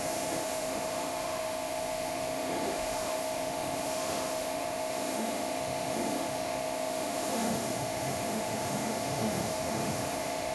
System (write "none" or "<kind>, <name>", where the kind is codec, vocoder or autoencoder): autoencoder, DAC-VAE